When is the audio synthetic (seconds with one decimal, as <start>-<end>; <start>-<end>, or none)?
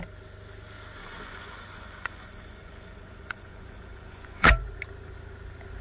1.0-4.5